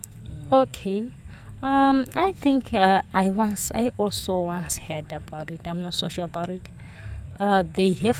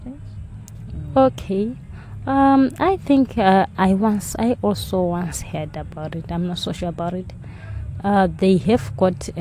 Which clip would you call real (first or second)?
second